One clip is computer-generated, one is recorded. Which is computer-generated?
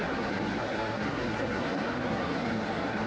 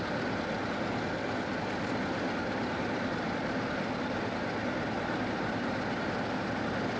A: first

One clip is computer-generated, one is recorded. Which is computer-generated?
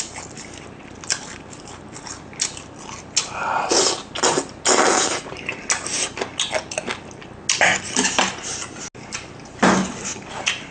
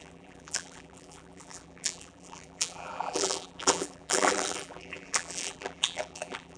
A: second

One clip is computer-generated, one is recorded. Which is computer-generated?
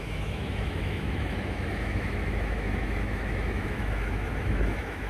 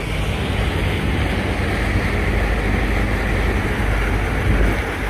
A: first